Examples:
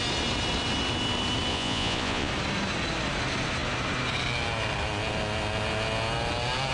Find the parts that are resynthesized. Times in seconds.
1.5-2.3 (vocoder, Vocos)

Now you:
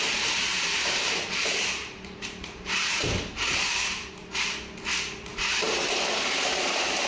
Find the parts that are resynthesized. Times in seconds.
0.5-4.1 (vocoder, BigVGAN v2); 5.3-6.0